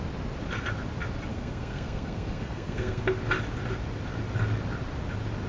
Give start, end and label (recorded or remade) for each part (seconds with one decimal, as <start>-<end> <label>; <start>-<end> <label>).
0.0-1.3 recorded; 1.3-3.0 remade; 3.0-5.5 recorded